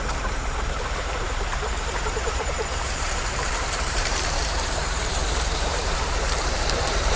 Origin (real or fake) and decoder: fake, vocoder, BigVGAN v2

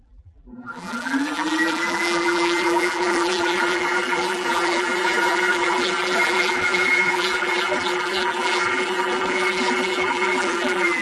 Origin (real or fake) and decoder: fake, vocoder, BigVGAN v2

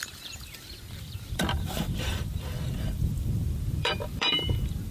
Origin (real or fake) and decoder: fake, vocoder, BigVGAN v2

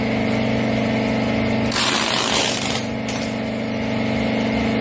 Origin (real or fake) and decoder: real